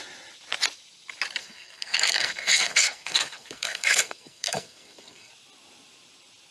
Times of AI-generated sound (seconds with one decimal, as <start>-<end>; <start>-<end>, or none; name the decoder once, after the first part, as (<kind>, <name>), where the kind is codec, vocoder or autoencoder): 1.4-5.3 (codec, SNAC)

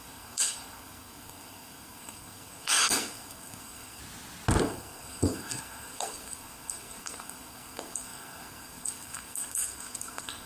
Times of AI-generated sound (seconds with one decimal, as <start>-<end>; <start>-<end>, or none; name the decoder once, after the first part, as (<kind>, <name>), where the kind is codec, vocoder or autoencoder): 0.0-4.0 (codec, SNAC); 4.6-10.5

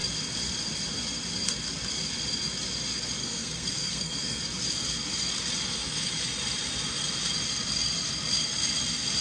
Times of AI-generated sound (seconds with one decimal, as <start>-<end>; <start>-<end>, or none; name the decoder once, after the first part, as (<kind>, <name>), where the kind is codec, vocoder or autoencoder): 3.2-4.4 (codec, SNAC)